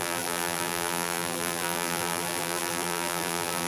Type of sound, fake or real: fake